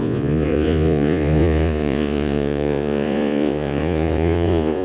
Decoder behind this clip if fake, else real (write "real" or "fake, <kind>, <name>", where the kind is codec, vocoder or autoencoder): fake, vocoder, Vocos